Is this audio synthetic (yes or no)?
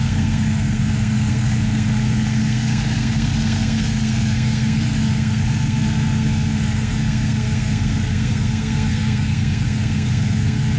yes